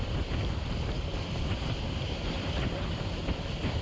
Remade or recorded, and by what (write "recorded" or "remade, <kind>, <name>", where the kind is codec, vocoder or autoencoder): remade, vocoder, BigVGAN v2